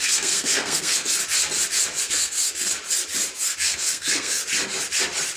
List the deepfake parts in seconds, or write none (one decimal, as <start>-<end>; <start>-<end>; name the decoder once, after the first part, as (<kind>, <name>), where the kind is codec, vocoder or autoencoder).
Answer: 0.0-1.2 (codec, SNAC); 2.0-2.7; 3.4-4.4